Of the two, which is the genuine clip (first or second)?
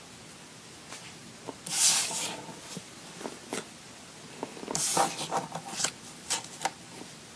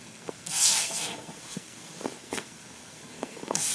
first